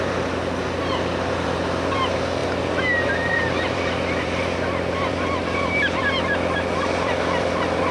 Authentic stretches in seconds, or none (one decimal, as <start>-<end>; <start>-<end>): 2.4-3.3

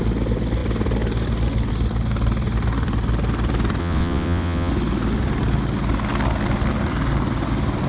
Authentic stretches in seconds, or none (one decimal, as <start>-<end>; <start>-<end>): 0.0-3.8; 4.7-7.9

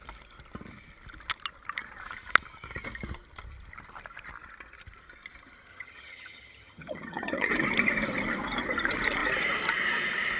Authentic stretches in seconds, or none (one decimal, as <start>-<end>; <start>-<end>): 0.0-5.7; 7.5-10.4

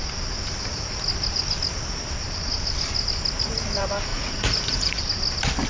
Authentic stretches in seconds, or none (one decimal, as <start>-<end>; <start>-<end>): 0.0-4.1; 5.0-5.7